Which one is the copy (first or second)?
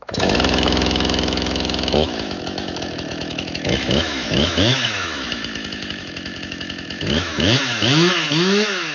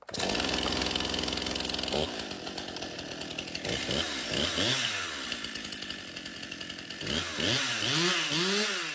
first